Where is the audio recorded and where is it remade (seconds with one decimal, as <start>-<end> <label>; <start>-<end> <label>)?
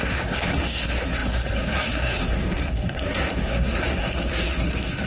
0.0-5.1 remade